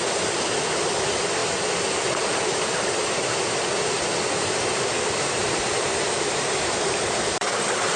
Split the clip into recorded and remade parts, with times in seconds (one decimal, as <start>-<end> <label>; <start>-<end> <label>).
0.0-5.4 recorded; 5.4-8.0 remade